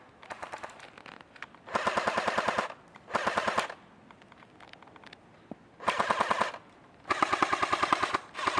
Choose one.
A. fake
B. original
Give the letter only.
B